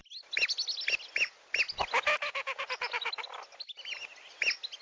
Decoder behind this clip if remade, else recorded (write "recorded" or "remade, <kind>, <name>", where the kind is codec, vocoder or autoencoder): recorded